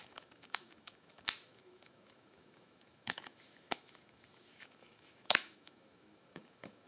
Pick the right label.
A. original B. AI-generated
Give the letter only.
B